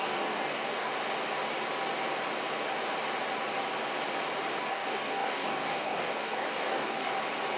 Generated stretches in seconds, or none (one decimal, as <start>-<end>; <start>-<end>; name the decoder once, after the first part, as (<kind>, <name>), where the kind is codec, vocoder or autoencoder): 0.0-0.9 (codec, DAC); 4.6-7.1